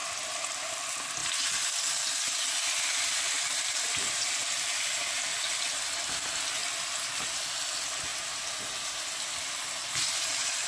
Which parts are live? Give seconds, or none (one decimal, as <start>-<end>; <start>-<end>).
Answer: 0.7-6.6; 7.4-10.7